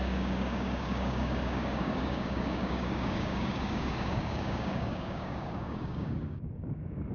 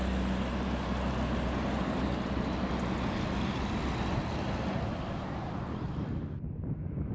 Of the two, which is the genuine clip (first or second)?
second